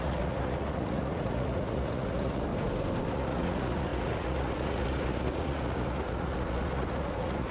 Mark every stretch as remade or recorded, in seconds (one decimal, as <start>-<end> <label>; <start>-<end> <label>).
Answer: 0.0-2.5 remade; 2.5-3.1 recorded; 3.1-7.5 remade

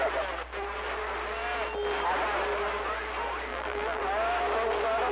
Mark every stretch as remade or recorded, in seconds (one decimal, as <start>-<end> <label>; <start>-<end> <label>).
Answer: 0.0-3.5 recorded; 3.5-4.0 remade; 4.0-5.1 recorded

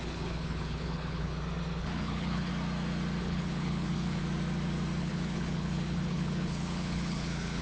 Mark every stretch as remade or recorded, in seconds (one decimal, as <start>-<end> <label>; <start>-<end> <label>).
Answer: 0.0-1.3 remade; 1.3-1.8 recorded; 1.8-2.5 remade; 2.5-3.2 recorded; 3.2-4.2 remade; 4.2-5.0 recorded; 5.0-7.6 remade